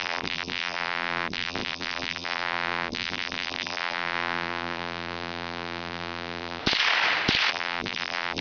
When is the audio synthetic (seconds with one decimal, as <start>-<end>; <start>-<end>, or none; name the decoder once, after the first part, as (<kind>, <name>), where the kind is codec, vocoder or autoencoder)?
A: 0.0-6.6 (vocoder, BigVGAN v2); 7.5-8.4

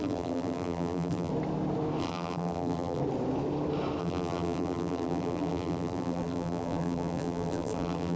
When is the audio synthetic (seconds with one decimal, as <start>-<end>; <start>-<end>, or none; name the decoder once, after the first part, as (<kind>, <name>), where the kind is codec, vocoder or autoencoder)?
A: 0.0-1.3 (vocoder, BigVGAN v2); 2.0-3.0; 4.0-8.2

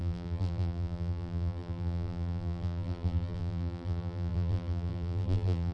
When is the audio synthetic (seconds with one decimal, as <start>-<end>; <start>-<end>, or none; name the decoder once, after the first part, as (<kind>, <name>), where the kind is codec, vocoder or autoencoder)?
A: 0.0-5.7 (vocoder, BigVGAN v2)

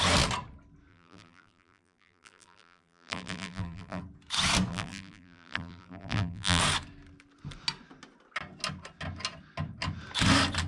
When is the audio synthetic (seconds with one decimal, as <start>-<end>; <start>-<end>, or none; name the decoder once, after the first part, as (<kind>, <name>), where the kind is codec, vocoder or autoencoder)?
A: 0.9-4.0 (vocoder, BigVGAN v2); 4.7-6.6

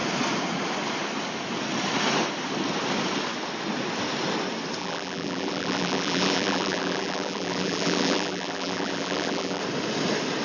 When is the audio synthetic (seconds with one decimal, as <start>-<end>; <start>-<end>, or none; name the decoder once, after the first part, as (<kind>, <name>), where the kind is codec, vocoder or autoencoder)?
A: 4.8-9.6 (vocoder, BigVGAN v2)

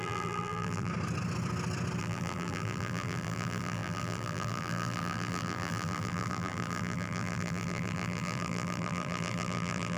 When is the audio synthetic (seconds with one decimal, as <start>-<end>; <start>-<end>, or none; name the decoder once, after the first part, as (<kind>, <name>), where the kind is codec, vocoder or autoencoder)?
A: 0.0-0.9 (vocoder, BigVGAN v2); 2.0-10.0